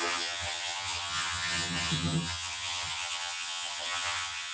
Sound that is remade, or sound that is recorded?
remade